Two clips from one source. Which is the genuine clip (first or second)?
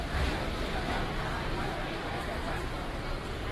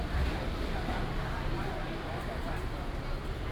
second